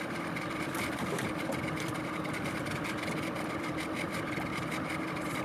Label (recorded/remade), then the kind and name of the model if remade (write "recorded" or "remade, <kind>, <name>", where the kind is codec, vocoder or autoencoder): remade, vocoder, BigVGAN v2